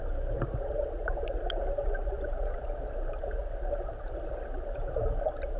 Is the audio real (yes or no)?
yes